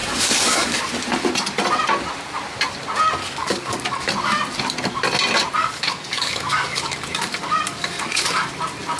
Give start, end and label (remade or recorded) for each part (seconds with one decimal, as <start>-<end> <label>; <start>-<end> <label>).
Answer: 0.0-0.8 remade; 0.8-3.2 recorded; 3.2-4.1 remade; 4.1-5.6 recorded; 5.6-8.5 remade; 8.5-9.0 recorded